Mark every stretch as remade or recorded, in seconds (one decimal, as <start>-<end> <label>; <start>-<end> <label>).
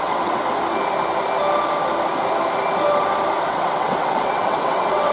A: 0.0-0.4 remade; 0.4-3.5 recorded; 3.5-5.1 remade